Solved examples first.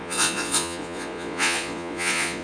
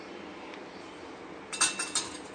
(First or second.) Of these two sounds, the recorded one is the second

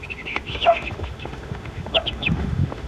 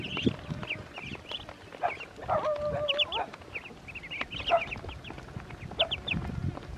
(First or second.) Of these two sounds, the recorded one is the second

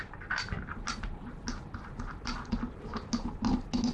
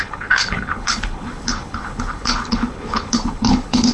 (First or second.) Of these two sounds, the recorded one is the first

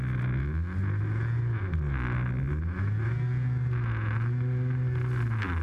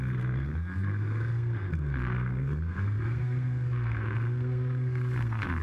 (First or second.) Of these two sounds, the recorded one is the first